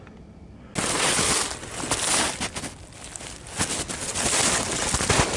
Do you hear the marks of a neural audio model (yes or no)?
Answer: no